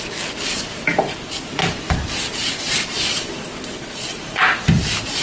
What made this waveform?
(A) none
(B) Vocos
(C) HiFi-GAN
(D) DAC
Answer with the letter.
A